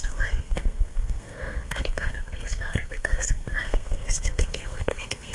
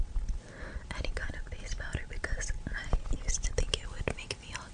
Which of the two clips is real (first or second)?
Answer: second